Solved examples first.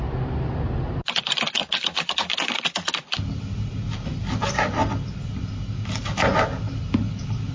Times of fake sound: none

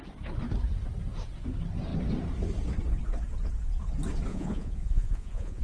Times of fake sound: 4.3-5.6 (vocoder, Vocos)

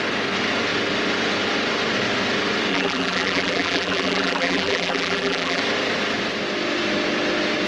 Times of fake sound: 2.7-5.6 (vocoder, BigVGAN v2)

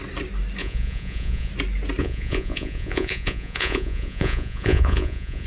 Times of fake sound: 0.6-1.5 (vocoder, Vocos); 2.0-5.5

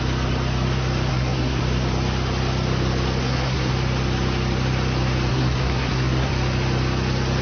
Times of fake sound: 1.1-1.6 (codec, SNAC); 3.2-3.7; 5.3-6.3